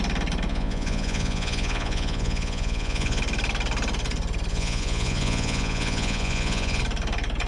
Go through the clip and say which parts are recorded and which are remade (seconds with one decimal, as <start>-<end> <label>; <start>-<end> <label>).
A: 0.0-0.5 recorded; 0.5-3.2 remade; 3.2-4.5 recorded; 4.5-6.8 remade; 6.8-7.5 recorded